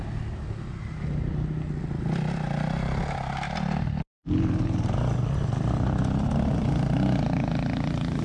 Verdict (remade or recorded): recorded